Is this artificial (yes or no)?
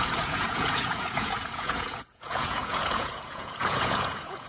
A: yes